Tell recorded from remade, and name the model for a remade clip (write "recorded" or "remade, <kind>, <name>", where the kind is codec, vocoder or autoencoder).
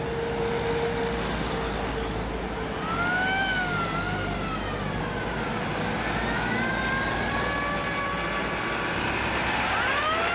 recorded